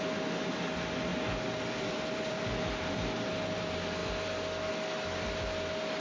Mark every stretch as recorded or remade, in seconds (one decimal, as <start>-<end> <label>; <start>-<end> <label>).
0.0-1.1 recorded; 1.1-2.4 remade; 2.4-6.0 recorded